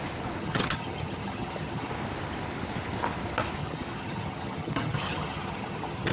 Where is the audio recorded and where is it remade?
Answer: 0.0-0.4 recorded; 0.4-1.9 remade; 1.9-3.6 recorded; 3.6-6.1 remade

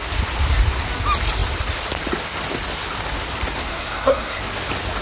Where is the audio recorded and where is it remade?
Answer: 0.0-3.6 recorded; 3.6-4.4 remade; 4.4-5.0 recorded

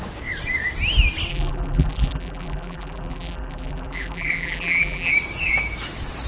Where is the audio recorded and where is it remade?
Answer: 0.0-1.3 recorded; 1.3-5.1 remade; 5.1-6.3 recorded

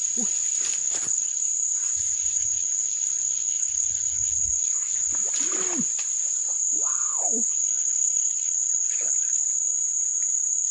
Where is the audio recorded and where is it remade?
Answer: 0.0-0.8 recorded; 0.8-1.4 remade; 1.4-2.1 recorded; 2.1-5.1 remade; 5.1-7.1 recorded; 7.1-9.4 remade; 9.4-10.7 recorded